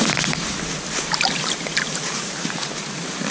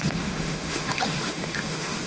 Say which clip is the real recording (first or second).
first